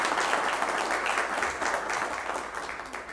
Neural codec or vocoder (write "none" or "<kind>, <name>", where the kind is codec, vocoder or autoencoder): none